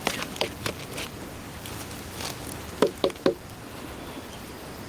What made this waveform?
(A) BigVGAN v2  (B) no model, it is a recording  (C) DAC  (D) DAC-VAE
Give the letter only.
A